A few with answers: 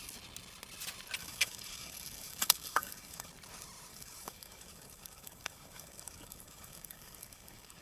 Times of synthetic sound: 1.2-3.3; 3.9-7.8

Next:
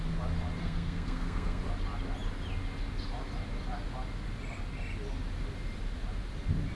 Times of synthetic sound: 0.6-1.6

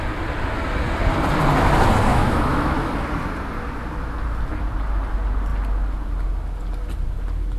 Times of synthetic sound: 2.1-2.9

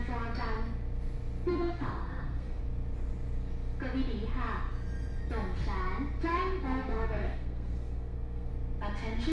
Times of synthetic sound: 1.5-2.6; 6.3-8.5

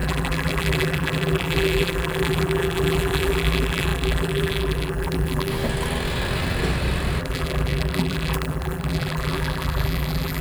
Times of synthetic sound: 0.0-5.5; 7.2-10.4